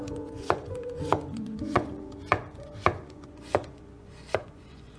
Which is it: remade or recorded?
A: remade